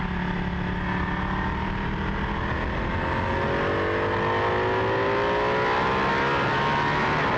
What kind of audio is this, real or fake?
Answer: real